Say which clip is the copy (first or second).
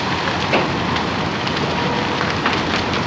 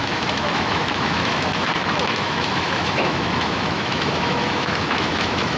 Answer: second